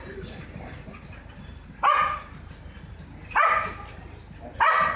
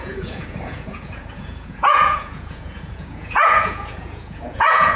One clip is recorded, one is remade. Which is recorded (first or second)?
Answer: first